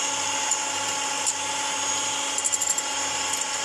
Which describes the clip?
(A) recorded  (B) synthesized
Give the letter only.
A